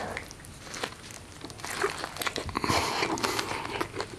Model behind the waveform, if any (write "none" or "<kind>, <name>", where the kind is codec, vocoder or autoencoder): none